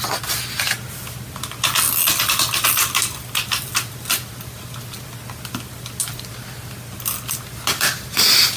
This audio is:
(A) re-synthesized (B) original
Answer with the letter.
B